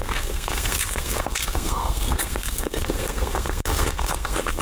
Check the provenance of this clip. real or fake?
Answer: fake